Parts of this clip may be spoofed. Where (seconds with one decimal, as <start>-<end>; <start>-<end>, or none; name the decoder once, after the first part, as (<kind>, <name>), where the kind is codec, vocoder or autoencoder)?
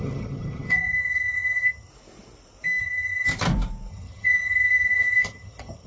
0.0-1.9 (vocoder, HiFi-GAN); 2.8-3.3; 3.9-5.9